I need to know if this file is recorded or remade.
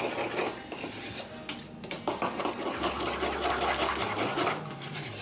recorded